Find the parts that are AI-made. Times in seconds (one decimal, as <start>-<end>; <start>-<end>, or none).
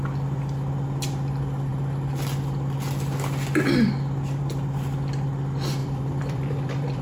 5.8-7.0